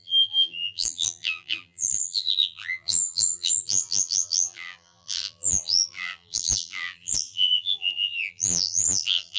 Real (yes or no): no